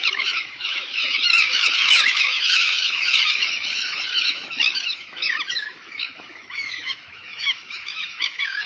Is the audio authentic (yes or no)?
no